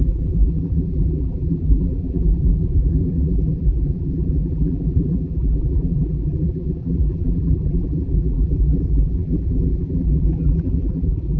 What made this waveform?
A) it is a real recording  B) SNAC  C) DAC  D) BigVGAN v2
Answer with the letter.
D